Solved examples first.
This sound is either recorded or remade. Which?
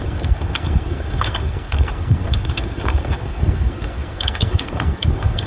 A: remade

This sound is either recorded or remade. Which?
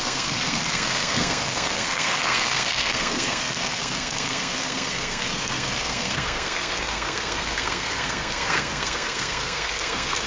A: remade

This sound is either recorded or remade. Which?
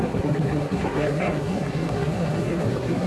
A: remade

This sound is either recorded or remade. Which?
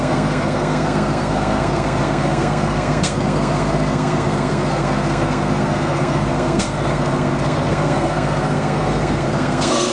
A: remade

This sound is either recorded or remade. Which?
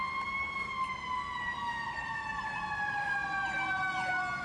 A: recorded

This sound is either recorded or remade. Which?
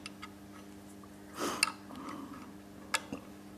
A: recorded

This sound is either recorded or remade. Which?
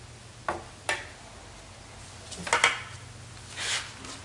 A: recorded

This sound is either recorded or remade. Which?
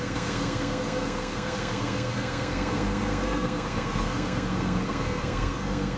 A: remade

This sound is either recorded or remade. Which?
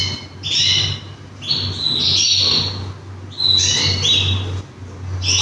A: recorded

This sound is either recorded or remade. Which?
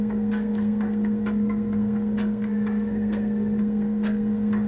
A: remade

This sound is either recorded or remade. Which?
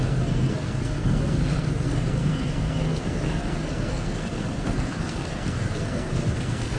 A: remade